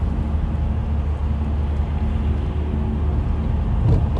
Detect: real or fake real